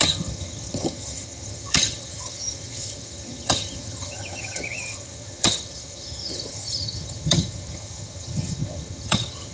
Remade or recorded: remade